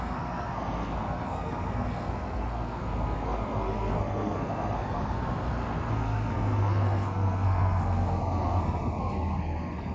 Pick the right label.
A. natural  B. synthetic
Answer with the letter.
B